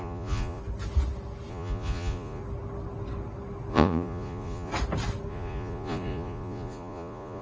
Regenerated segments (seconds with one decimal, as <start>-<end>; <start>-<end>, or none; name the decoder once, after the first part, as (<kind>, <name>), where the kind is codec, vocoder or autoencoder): 0.0-0.6 (vocoder, Vocos); 1.5-2.4; 3.7-4.7; 5.3-7.4